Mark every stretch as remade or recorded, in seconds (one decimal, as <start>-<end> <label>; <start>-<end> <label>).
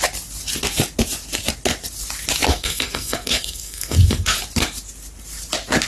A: 0.0-2.5 recorded; 2.5-4.4 remade; 4.4-5.9 recorded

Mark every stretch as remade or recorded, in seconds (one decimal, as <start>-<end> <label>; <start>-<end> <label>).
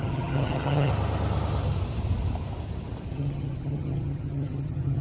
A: 0.0-0.9 remade; 0.9-3.1 recorded; 3.1-5.0 remade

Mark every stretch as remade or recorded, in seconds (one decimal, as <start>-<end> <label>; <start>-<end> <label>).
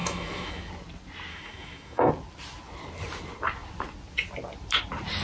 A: 0.0-0.7 remade; 0.7-1.3 recorded; 1.3-2.1 remade; 2.1-5.2 recorded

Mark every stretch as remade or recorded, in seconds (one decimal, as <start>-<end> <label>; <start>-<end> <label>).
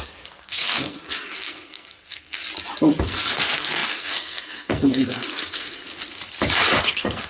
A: 0.0-2.4 remade; 2.4-3.0 recorded; 3.0-5.8 remade; 5.8-6.8 recorded; 6.8-7.3 remade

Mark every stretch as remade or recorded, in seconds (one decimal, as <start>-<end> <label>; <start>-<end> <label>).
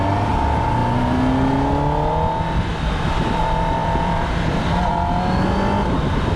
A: 0.0-2.7 recorded; 2.7-3.4 remade; 3.4-3.8 recorded; 3.8-4.9 remade; 4.9-6.4 recorded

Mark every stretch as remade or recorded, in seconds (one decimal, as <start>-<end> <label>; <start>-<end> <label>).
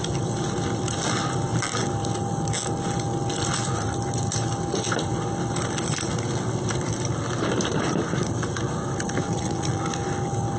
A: 0.0-9.2 recorded; 9.2-9.8 remade; 9.8-10.6 recorded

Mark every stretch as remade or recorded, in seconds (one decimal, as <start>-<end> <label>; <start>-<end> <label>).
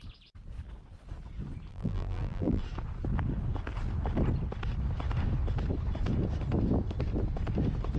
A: 0.0-1.7 recorded; 1.7-2.6 remade; 2.6-8.0 recorded